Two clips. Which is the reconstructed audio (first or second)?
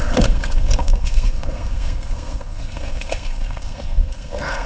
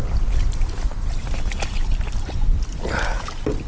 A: first